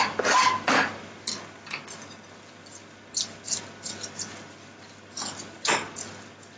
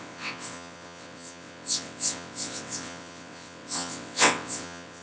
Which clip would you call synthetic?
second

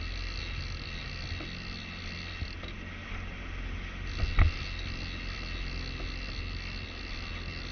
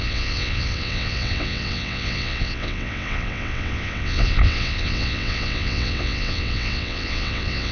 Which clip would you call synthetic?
second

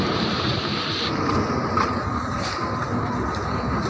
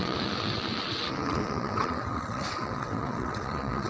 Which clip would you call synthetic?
second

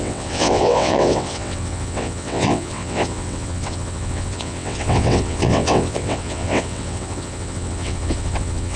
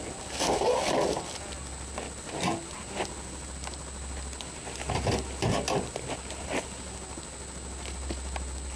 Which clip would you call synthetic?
first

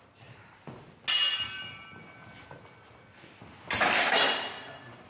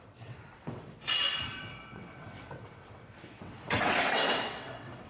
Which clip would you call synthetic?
second